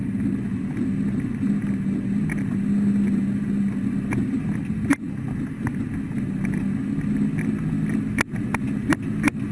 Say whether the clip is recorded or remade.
recorded